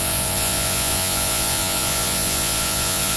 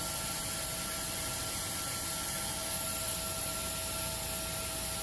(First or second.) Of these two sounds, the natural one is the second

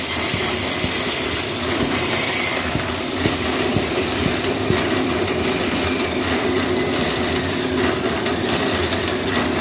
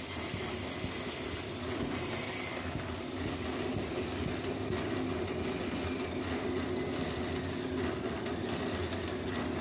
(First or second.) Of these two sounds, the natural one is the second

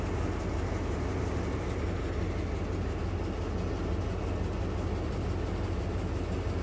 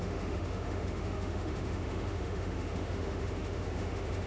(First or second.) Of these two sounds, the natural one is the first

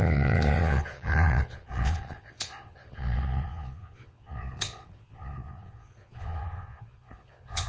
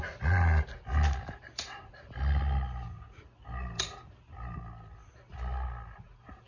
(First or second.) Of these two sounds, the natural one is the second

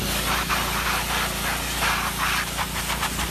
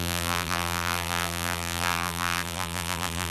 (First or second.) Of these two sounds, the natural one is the first